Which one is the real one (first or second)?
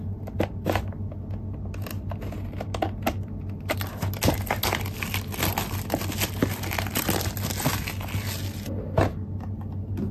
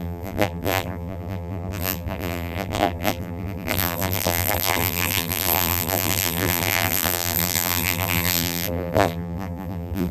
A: first